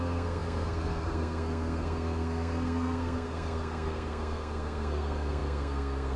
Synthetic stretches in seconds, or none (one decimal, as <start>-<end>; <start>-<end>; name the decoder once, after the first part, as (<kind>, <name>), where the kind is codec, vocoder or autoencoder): 0.0-6.2 (codec, SNAC)